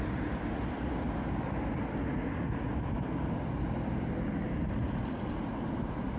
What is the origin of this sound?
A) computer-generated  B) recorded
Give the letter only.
B